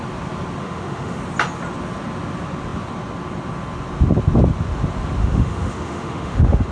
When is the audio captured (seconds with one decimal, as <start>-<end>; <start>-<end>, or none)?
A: 0.0-0.6; 1.2-5.2